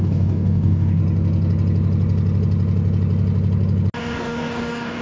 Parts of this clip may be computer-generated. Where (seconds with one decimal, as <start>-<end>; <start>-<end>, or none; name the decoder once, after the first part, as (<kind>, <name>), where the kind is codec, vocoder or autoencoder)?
0.0-1.0 (codec, DAC); 4.0-5.0